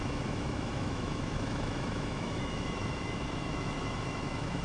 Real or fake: fake